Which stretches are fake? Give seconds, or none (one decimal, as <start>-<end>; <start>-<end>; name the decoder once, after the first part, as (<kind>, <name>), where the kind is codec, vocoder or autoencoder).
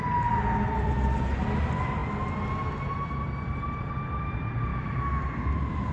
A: 4.7-5.2 (autoencoder, DAC-VAE)